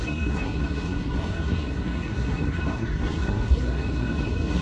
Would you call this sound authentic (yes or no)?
no